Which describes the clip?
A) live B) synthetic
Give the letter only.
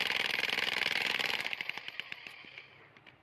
B